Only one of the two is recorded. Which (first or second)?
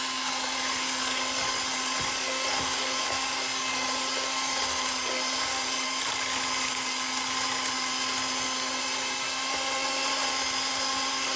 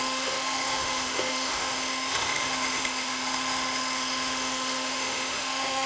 first